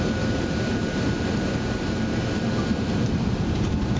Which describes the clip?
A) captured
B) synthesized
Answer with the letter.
B